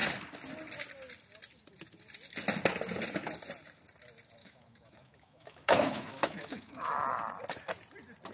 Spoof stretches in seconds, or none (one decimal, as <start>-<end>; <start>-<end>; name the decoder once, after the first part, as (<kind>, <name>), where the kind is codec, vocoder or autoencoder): 4.4-6.9 (autoencoder, DAC-VAE)